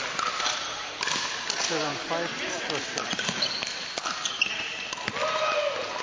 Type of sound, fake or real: real